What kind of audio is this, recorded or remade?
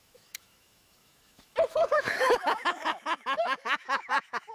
remade